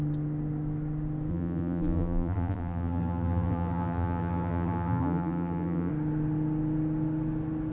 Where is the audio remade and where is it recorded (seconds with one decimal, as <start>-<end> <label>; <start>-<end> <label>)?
0.0-1.3 recorded; 1.3-5.9 remade; 5.9-7.7 recorded